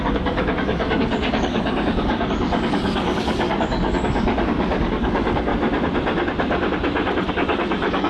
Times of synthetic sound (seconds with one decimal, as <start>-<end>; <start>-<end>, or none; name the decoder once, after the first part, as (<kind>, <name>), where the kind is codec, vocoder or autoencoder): 0.0-5.5 (codec, DAC); 7.3-8.1